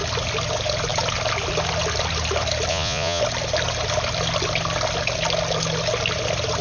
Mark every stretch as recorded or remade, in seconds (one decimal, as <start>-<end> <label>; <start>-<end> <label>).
0.0-2.7 recorded; 2.7-3.2 remade; 3.2-6.6 recorded